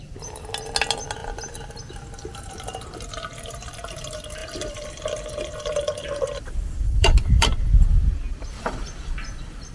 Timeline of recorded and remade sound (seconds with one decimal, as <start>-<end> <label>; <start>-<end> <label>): 0.0-1.2 recorded; 1.2-1.8 remade; 1.8-4.4 recorded; 4.4-9.7 remade